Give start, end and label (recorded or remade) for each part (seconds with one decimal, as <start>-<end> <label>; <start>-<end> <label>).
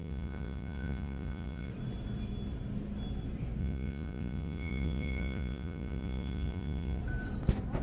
0.0-1.7 remade; 1.7-3.6 recorded; 3.6-7.0 remade; 7.0-7.8 recorded